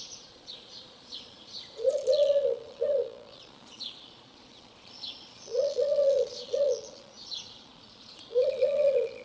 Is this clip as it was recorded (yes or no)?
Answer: no